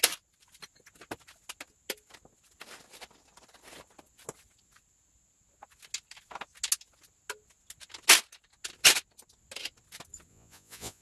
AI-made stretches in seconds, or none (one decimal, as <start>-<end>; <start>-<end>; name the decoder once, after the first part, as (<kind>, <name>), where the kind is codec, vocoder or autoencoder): 10.3-11.0 (vocoder, Vocos)